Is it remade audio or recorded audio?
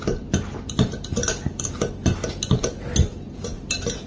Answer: recorded